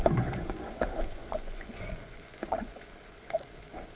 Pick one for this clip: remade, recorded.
remade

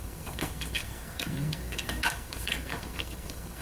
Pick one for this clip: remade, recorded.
remade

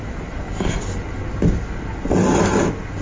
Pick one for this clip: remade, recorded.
recorded